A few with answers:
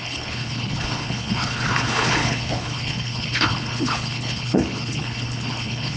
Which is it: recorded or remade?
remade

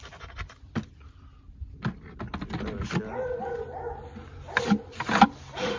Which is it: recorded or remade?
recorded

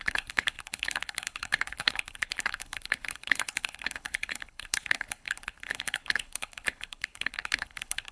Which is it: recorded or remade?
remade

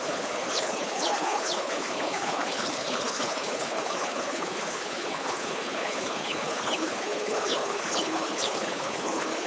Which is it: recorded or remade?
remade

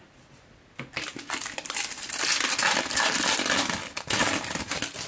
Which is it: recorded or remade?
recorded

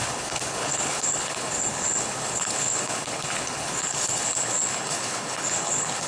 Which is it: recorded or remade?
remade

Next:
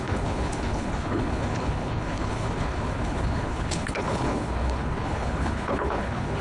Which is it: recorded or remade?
remade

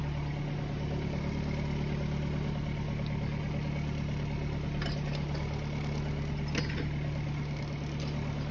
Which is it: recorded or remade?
recorded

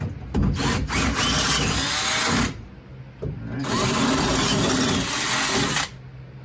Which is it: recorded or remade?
recorded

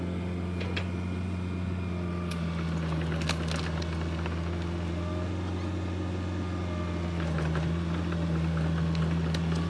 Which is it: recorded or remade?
recorded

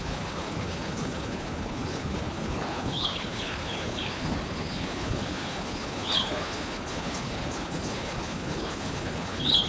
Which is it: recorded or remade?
remade